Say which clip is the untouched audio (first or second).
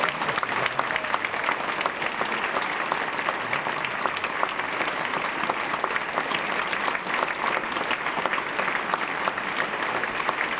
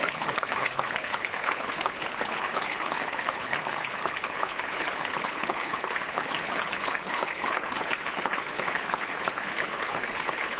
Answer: first